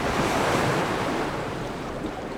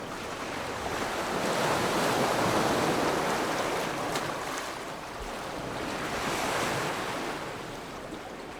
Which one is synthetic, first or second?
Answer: first